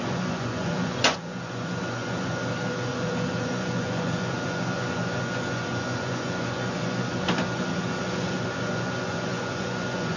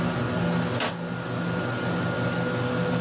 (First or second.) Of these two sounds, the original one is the second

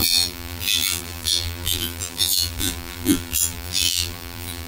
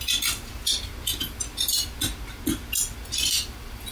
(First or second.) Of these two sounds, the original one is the second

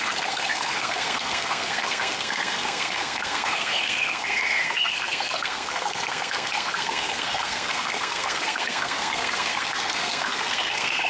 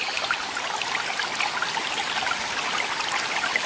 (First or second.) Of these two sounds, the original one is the second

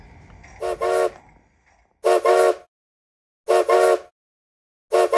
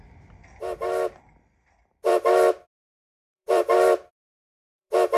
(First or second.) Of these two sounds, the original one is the first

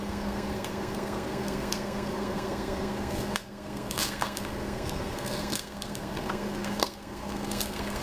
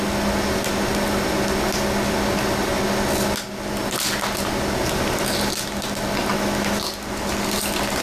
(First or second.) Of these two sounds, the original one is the second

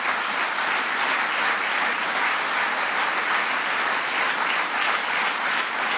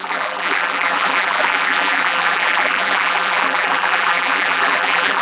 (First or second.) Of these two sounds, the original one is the first